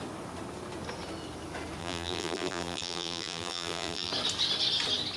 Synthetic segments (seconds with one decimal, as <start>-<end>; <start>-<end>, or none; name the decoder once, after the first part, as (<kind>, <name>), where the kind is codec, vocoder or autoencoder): 1.8-4.1 (vocoder, BigVGAN v2)